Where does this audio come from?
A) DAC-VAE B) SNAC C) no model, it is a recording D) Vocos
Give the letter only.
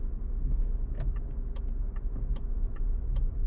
C